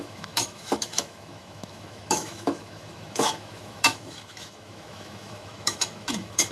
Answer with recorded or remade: remade